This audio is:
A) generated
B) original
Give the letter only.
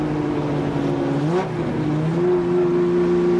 B